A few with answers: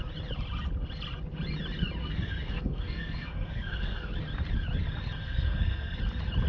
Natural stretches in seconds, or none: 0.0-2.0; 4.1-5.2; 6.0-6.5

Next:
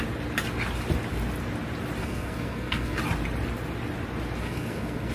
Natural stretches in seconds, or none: 0.0-2.0; 3.0-4.4

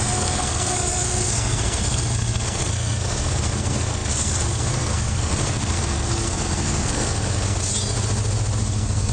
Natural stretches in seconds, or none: 7.7-8.6

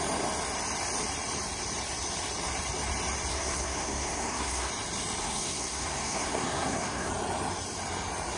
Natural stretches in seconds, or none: 0.0-3.3; 4.7-5.2; 7.1-8.4

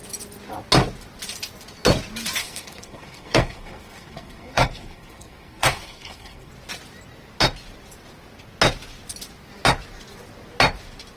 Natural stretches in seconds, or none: 0.0-2.4; 6.5-11.2